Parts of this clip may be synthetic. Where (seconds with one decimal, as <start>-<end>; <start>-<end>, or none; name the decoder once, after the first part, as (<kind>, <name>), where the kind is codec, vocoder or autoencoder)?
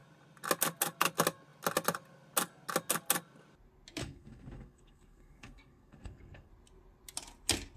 4.0-6.5 (codec, SNAC)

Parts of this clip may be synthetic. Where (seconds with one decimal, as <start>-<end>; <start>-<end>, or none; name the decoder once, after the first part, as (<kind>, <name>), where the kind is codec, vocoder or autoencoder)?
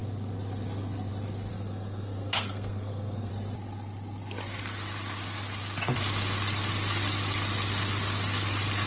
1.5-3.3 (codec, SNAC)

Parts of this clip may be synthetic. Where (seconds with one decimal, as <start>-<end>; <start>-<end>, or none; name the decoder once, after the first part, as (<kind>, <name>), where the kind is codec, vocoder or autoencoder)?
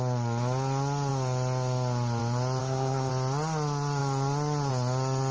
2.6-3.1 (codec, SNAC)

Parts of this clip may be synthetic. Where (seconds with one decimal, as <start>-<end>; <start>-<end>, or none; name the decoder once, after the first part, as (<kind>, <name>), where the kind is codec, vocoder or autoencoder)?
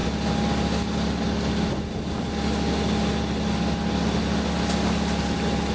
none